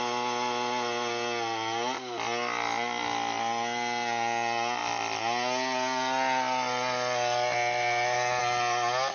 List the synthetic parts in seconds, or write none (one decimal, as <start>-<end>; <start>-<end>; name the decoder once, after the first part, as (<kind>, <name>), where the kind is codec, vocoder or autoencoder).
none